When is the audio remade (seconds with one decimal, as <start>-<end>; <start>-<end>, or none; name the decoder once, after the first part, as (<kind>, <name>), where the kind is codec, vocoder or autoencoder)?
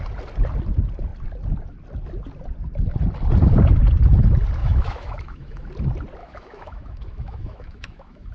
4.6-5.7 (autoencoder, DAC-VAE); 6.2-8.3